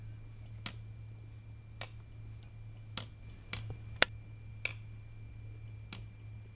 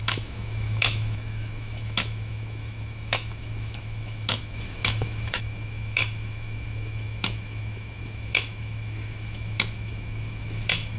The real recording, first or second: first